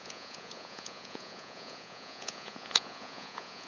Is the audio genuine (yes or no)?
no